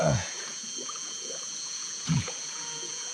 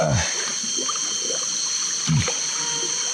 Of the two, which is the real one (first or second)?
second